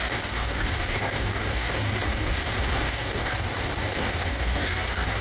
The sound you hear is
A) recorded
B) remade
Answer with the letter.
B